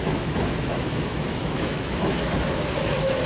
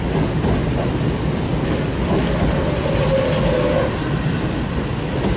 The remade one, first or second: first